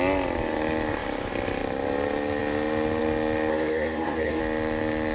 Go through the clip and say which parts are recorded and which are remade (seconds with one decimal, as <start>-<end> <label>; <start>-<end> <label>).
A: 0.0-3.5 recorded; 3.5-4.4 remade; 4.4-5.1 recorded